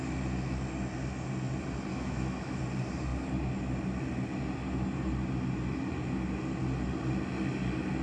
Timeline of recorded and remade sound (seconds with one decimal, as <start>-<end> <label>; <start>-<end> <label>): 0.0-1.9 recorded; 1.9-2.6 remade; 2.6-8.0 recorded